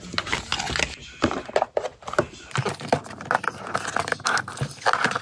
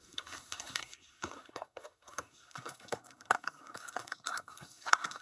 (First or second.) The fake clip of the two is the second